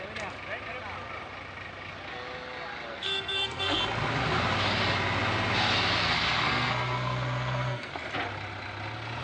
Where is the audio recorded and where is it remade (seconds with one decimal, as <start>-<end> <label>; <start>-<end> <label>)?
0.0-2.9 recorded; 2.9-3.8 remade; 3.8-6.0 recorded; 6.0-7.9 remade; 7.9-9.2 recorded